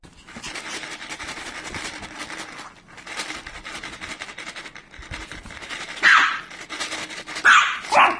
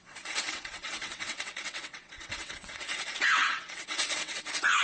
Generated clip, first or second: second